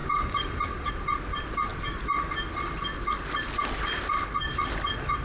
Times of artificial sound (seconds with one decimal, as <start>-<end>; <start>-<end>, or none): 0.0-0.9